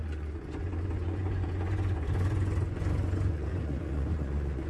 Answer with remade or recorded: remade